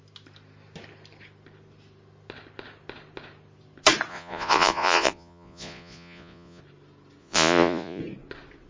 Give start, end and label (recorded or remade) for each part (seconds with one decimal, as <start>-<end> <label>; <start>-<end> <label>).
0.0-4.1 recorded; 4.1-6.6 remade; 6.6-7.2 recorded; 7.2-8.0 remade; 8.0-8.7 recorded